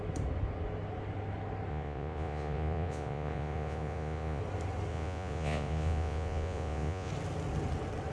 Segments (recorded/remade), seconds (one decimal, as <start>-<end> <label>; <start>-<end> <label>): 0.0-1.7 recorded; 1.7-4.4 remade; 4.4-4.9 recorded; 4.9-7.1 remade; 7.1-8.1 recorded